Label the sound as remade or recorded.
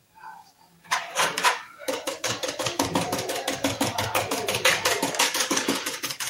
remade